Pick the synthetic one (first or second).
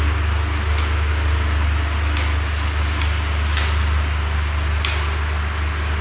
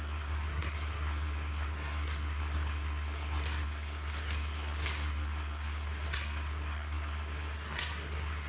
second